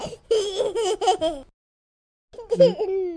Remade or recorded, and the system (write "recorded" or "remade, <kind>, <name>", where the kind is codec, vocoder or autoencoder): recorded